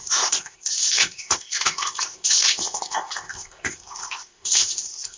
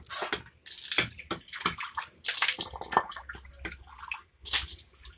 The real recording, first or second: second